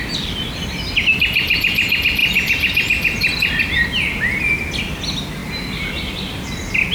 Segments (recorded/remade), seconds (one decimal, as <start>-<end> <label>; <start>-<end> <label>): 0.0-6.9 recorded